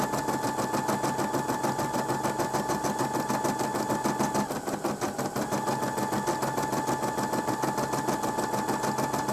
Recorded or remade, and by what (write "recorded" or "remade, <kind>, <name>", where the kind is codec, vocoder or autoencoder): recorded